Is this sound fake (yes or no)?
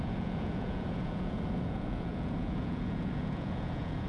yes